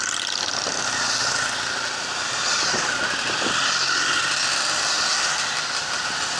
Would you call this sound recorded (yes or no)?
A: yes